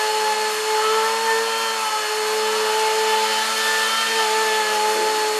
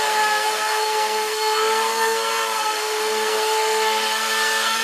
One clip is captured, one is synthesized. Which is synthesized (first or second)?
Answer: second